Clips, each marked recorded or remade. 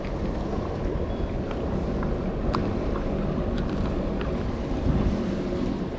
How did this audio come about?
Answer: recorded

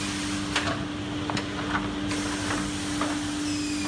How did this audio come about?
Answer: recorded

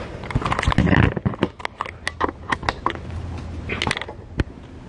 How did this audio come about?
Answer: recorded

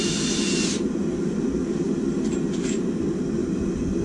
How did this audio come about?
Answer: recorded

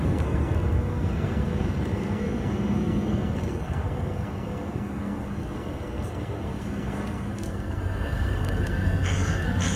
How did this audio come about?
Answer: remade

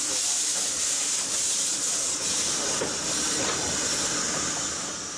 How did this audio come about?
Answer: recorded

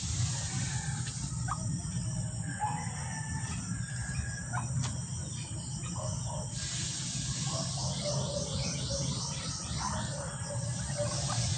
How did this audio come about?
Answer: recorded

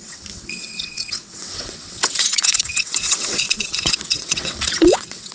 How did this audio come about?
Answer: remade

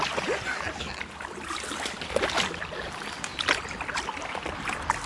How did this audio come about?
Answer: recorded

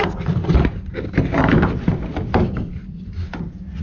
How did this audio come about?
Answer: recorded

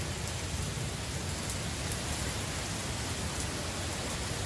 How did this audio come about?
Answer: recorded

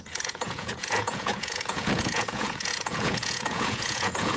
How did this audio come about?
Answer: remade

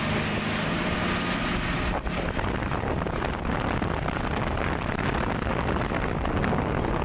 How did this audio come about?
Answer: recorded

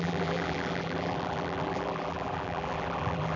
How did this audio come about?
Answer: remade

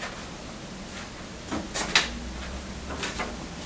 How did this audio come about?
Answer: recorded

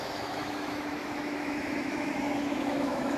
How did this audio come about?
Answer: remade